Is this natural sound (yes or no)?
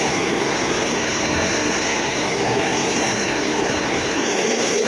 no